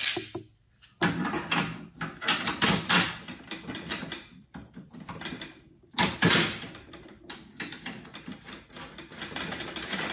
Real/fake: real